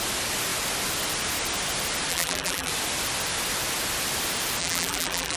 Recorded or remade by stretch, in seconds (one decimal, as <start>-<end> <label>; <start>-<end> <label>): 0.0-2.1 recorded; 2.1-2.7 remade; 2.7-4.6 recorded; 4.6-5.4 remade